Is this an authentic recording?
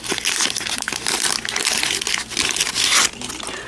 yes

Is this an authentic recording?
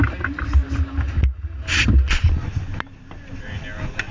yes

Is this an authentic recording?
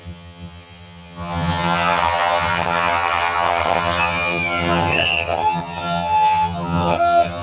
no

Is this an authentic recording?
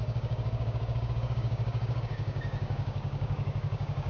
no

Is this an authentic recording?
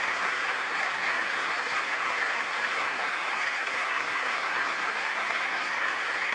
no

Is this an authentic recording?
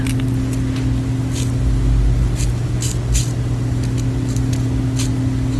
yes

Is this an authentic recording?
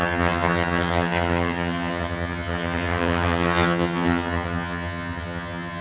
no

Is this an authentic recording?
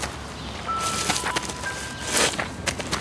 yes